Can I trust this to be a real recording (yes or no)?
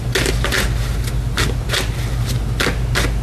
yes